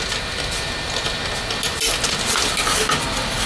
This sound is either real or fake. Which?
real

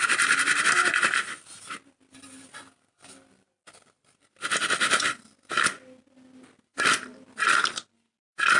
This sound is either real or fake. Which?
real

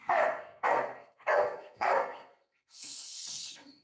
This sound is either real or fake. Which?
fake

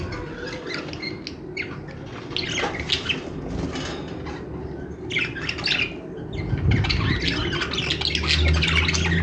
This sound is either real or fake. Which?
real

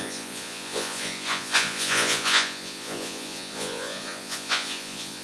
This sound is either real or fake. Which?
fake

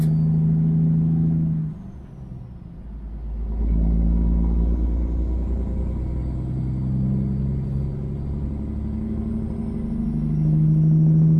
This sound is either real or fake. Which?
real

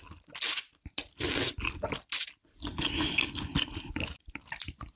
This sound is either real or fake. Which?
real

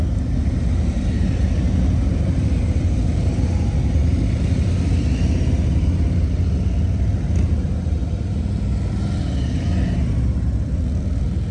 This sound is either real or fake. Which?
real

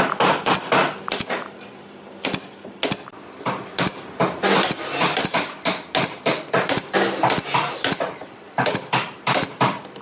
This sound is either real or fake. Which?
real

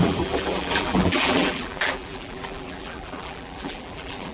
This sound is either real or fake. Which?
fake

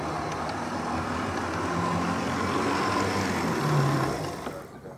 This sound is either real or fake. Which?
real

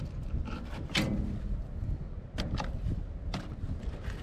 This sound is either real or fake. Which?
real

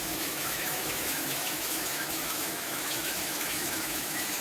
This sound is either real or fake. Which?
fake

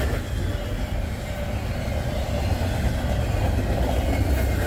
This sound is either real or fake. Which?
real